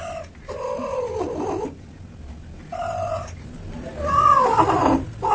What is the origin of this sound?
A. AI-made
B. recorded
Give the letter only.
B